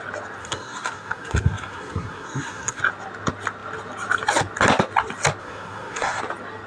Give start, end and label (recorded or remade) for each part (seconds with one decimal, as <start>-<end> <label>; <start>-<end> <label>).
0.0-0.4 recorded; 0.4-2.8 remade; 2.8-5.4 recorded; 5.4-6.2 remade; 6.2-6.7 recorded